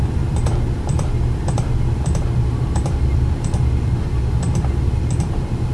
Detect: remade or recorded remade